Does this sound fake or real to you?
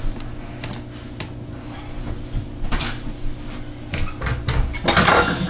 real